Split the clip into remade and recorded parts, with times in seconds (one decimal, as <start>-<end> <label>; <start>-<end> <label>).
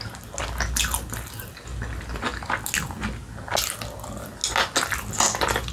0.0-5.7 recorded